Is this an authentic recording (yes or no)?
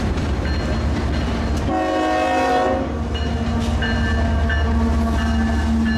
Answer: yes